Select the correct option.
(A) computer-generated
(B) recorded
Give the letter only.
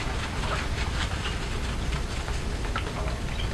B